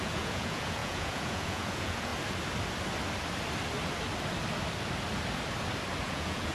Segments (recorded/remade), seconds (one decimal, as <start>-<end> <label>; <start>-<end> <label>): 0.0-2.1 remade; 2.1-6.0 recorded; 6.0-6.5 remade